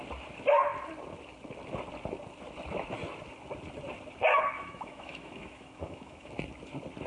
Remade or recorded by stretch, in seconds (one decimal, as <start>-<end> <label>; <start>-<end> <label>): 0.0-4.3 recorded; 4.3-6.3 remade; 6.3-7.1 recorded